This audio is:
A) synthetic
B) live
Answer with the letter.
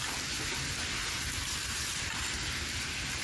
B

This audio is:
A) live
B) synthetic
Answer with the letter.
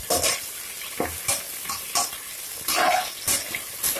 A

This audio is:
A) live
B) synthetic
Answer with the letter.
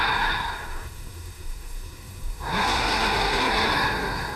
B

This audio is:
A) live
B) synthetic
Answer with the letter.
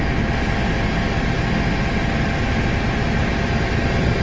A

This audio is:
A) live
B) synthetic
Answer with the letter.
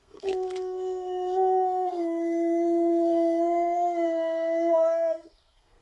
B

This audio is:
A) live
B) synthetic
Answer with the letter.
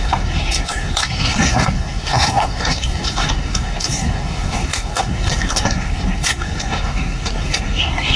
B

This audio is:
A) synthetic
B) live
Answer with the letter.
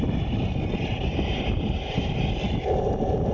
B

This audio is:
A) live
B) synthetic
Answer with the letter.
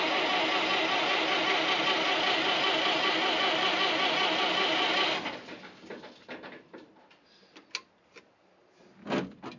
A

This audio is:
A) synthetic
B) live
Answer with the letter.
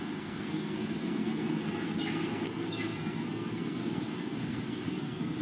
A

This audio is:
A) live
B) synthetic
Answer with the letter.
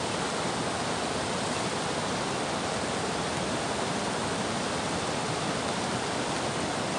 A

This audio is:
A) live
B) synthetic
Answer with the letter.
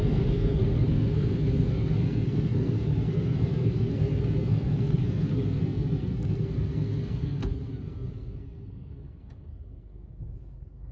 B